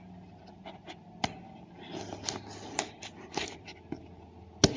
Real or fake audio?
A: real